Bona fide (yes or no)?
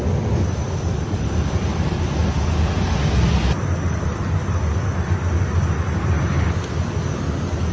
yes